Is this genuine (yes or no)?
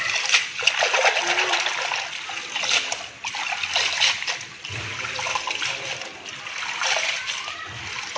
yes